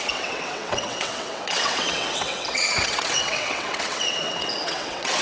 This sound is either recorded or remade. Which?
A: remade